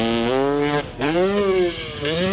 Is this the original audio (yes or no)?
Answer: yes